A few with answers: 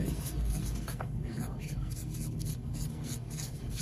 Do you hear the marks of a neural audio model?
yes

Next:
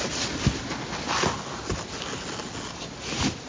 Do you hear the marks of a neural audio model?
no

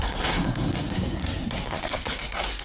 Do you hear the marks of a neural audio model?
yes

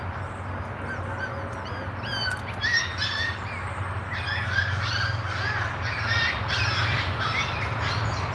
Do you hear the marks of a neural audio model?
no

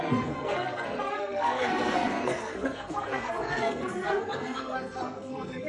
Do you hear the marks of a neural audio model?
yes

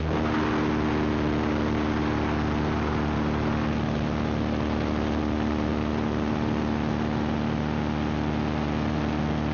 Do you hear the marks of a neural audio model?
no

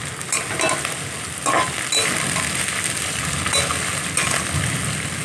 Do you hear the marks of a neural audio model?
no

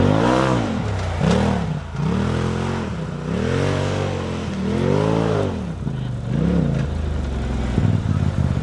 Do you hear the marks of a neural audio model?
no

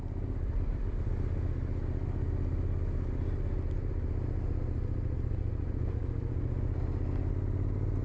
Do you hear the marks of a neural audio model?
no